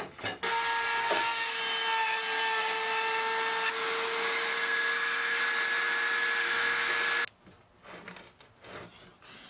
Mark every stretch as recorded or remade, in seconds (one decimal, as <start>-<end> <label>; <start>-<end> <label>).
0.0-1.0 recorded; 1.0-1.6 remade; 1.6-4.5 recorded; 4.5-5.4 remade; 5.4-6.4 recorded; 6.4-6.9 remade; 6.9-9.5 recorded